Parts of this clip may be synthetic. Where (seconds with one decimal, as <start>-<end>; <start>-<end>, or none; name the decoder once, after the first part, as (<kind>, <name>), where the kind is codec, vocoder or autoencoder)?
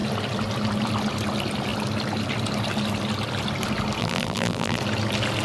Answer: 4.0-4.8 (vocoder, BigVGAN v2)